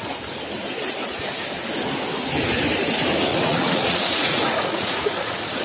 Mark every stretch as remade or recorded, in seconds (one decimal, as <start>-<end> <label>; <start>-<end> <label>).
0.0-3.3 recorded; 3.3-5.6 remade